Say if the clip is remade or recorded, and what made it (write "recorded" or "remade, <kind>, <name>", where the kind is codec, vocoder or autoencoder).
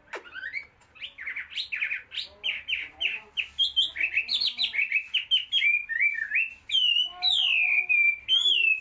recorded